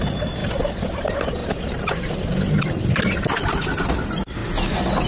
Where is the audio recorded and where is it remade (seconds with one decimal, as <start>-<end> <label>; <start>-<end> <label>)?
0.0-1.4 recorded; 1.4-2.8 remade; 2.8-5.1 recorded